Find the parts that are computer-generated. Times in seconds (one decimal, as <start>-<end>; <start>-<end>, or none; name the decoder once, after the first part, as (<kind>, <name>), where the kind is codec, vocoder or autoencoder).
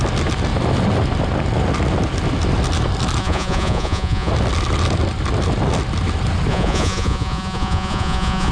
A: 3.2-4.3 (vocoder, Vocos); 6.5-8.5